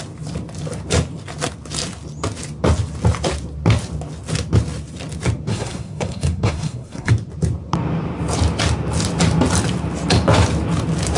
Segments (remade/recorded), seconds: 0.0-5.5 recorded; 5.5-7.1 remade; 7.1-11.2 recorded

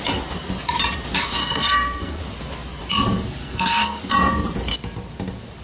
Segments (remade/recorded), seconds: 0.0-1.4 recorded; 1.4-2.2 remade; 2.2-3.4 recorded; 3.4-4.0 remade; 4.0-5.6 recorded

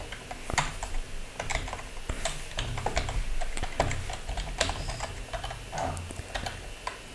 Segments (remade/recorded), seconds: 0.0-7.1 recorded

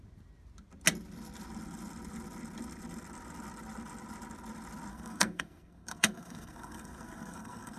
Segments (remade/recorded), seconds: 0.0-4.9 recorded; 4.9-7.8 remade